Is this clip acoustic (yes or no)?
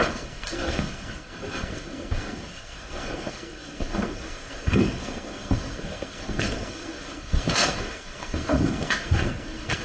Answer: no